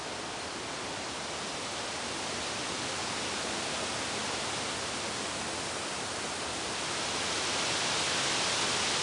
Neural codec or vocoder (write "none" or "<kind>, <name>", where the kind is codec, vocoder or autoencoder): none